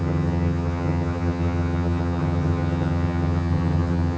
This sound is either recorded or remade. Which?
remade